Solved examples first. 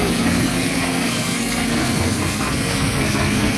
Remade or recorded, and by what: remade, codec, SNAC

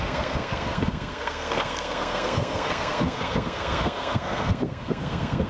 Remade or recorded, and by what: remade, codec, SNAC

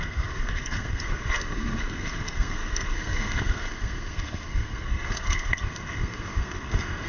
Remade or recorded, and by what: remade, codec, SNAC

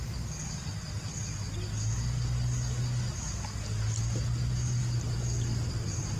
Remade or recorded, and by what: recorded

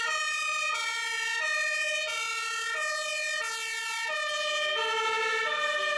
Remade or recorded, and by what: recorded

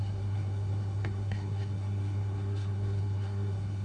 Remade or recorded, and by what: remade, codec, SNAC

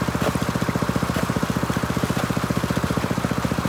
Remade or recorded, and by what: recorded